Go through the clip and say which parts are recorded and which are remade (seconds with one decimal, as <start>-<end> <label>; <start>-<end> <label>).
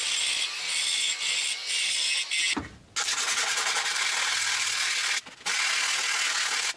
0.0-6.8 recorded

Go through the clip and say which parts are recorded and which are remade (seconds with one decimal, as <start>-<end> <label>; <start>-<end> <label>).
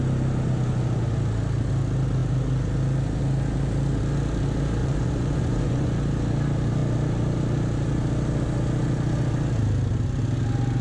0.0-4.8 recorded; 4.8-5.9 remade; 5.9-10.8 recorded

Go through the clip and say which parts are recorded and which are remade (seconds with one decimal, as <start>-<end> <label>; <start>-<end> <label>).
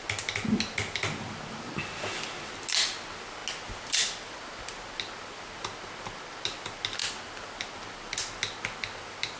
0.0-9.4 recorded